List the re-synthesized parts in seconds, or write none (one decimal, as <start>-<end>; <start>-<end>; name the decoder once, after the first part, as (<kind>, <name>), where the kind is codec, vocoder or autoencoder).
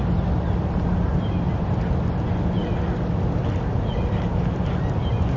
none